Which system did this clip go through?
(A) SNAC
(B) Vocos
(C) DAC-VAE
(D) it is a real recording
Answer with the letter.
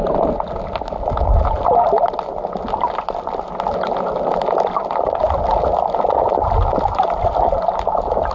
D